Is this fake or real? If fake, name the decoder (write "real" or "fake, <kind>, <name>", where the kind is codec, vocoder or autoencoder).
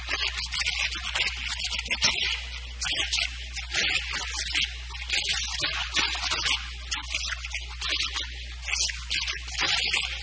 real